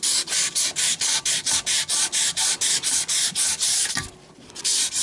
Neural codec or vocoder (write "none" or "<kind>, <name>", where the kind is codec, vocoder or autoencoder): none